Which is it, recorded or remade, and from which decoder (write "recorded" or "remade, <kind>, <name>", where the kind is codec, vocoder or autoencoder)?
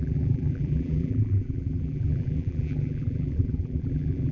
remade, vocoder, BigVGAN v2